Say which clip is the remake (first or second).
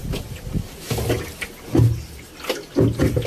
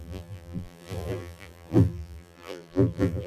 second